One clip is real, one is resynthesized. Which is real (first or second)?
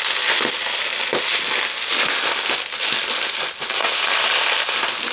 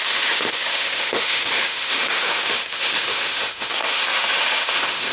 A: first